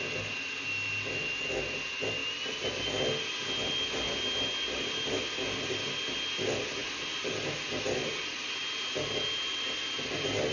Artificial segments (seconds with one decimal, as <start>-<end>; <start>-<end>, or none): none